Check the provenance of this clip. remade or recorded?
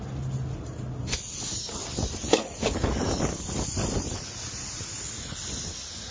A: recorded